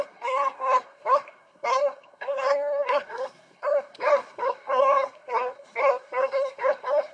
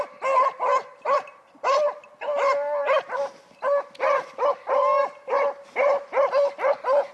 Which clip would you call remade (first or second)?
first